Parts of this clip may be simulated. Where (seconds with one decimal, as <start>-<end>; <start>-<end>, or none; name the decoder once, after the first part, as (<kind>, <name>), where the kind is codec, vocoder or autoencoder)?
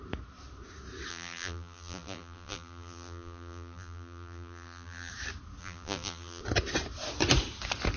1.1-5.1 (vocoder, BigVGAN v2); 5.6-6.4